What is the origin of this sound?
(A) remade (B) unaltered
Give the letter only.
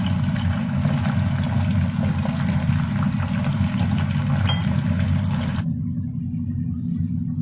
B